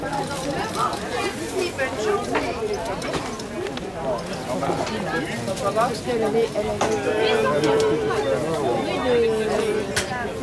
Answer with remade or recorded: recorded